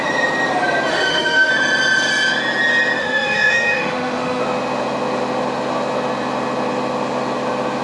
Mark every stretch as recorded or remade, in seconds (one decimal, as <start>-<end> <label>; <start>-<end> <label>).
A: 0.0-0.9 recorded; 0.9-1.5 remade; 1.5-3.0 recorded; 3.0-4.4 remade; 4.4-7.8 recorded